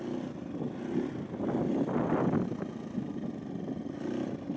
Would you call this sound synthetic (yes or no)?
no